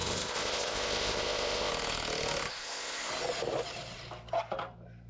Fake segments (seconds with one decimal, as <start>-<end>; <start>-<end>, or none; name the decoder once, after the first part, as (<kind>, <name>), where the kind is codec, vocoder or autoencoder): 0.0-1.7 (codec, ZipCodec); 2.5-3.1